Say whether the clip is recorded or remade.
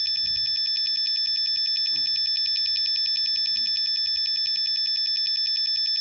recorded